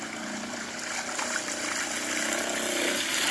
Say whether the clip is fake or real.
fake